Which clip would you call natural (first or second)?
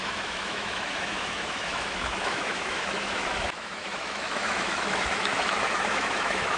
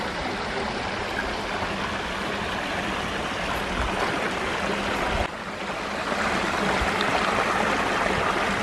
second